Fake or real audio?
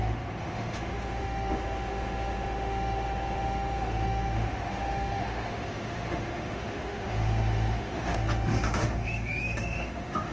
fake